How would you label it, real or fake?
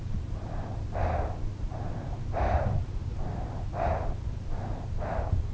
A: real